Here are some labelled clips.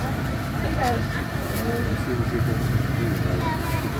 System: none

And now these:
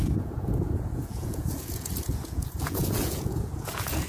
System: vocoder, Vocos